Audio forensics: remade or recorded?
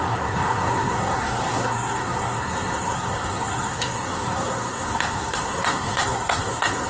remade